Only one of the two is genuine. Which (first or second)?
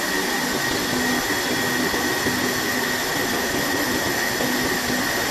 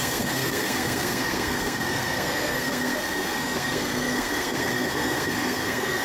first